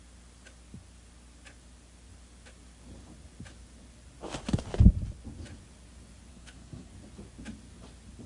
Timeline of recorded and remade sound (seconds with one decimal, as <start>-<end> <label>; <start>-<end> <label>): 0.0-6.3 recorded; 6.3-6.9 remade; 6.9-8.3 recorded